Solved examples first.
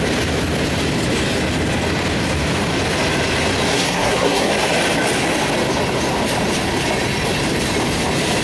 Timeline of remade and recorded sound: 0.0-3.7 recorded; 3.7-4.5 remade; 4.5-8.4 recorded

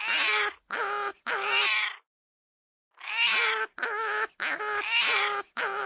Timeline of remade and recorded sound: 0.0-5.9 recorded

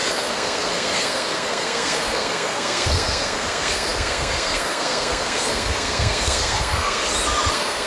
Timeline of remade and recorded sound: 0.0-7.0 remade; 7.0-7.5 recorded; 7.5-7.9 remade

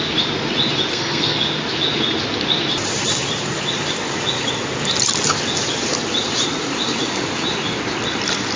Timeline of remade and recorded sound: 0.0-0.9 recorded; 0.9-1.4 remade; 1.4-8.6 recorded

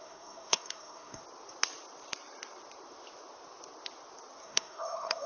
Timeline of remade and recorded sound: 0.0-1.2 remade; 1.2-4.4 recorded; 4.4-5.3 remade

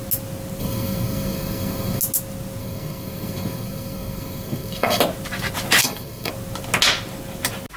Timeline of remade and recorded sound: 0.0-0.6 recorded; 0.6-2.0 remade; 2.0-2.6 recorded; 2.6-5.0 remade; 5.0-5.8 recorded; 5.8-6.3 remade; 6.3-7.8 recorded

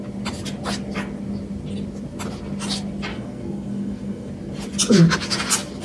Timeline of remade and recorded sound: 0.0-3.1 recorded; 3.1-4.3 remade; 4.3-5.8 recorded

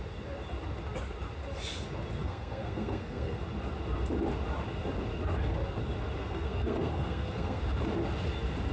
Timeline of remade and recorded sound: 0.0-2.2 recorded; 2.2-3.4 remade; 3.4-6.2 recorded; 6.2-7.6 remade; 7.6-8.7 recorded